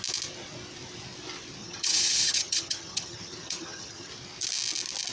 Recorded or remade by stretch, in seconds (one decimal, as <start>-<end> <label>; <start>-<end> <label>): 0.0-1.6 recorded; 1.6-4.1 remade; 4.1-5.1 recorded